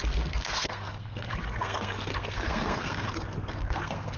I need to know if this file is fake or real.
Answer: fake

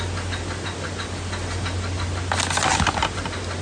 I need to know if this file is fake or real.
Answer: real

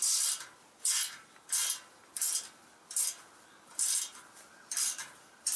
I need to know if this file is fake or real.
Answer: fake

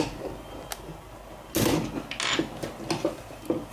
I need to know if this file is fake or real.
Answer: real